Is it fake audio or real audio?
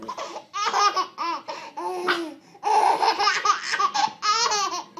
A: real